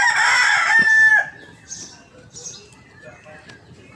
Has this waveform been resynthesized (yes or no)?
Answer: no